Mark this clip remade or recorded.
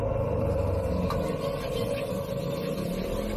recorded